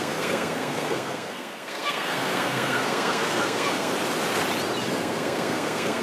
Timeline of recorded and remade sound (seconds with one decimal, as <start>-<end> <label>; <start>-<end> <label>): 0.0-3.9 remade; 3.9-4.9 recorded; 4.9-6.0 remade